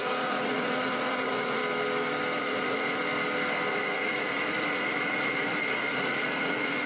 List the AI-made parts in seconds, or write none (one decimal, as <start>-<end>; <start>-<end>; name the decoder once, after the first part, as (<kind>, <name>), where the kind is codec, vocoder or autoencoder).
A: 0.0-1.6 (vocoder, Vocos); 2.4-3.0; 3.7-6.9